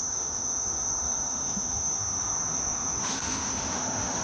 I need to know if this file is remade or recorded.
remade